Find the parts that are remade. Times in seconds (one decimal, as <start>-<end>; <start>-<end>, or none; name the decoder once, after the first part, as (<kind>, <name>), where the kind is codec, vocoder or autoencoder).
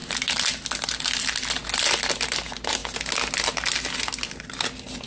none